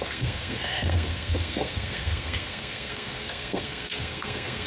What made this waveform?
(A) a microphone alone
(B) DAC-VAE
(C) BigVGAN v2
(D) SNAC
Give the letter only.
D